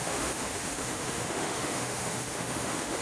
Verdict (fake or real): fake